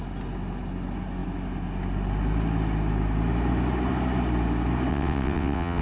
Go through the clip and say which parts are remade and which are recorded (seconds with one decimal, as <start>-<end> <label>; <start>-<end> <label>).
0.0-4.9 recorded; 4.9-5.8 remade